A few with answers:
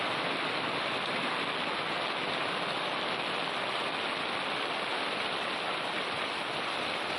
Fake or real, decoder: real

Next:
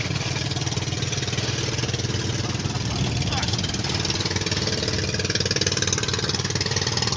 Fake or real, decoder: real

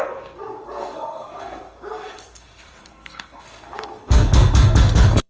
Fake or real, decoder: fake, codec, SNAC